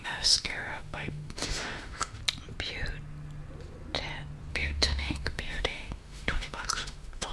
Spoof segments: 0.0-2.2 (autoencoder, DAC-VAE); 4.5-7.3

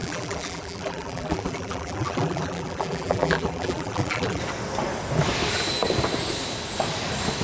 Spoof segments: 0.0-4.4 (vocoder, BigVGAN v2)

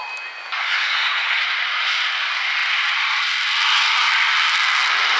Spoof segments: 0.6-1.4 (codec, SNAC)

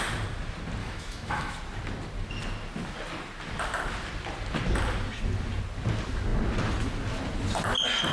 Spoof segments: 0.8-1.5 (autoencoder, DAC-VAE)